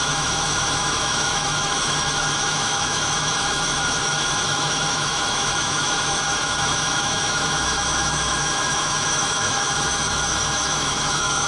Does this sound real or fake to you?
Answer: fake